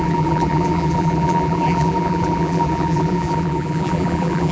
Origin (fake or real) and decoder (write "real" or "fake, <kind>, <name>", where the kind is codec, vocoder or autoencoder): fake, vocoder, BigVGAN v2